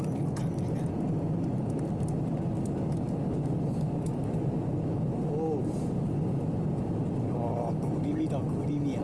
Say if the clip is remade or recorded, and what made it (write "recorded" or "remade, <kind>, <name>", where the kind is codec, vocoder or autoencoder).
recorded